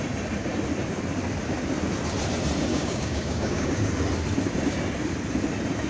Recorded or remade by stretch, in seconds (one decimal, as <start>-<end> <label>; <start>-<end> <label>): 0.0-2.7 recorded; 2.7-3.9 remade; 3.9-5.9 recorded